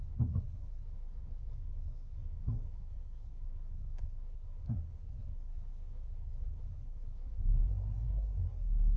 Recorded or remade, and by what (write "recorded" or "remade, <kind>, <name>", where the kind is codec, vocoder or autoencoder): remade, codec, SNAC